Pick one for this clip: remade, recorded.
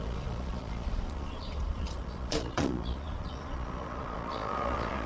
remade